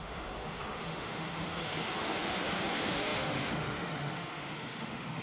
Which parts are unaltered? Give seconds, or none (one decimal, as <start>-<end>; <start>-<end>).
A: none